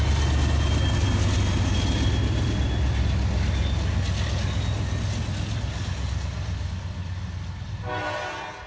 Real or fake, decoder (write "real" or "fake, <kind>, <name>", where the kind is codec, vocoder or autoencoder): real